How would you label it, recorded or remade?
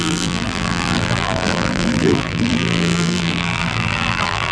remade